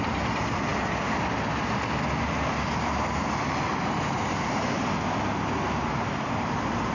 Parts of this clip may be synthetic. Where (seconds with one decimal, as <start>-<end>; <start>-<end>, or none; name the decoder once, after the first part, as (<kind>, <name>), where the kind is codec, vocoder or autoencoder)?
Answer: none